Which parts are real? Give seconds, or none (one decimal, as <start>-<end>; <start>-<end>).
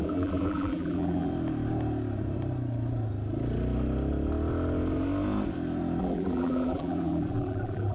1.3-6.0